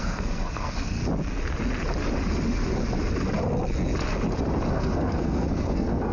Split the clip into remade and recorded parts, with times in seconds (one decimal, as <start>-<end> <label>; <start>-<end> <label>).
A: 0.0-1.0 remade; 1.0-4.7 recorded; 4.7-6.1 remade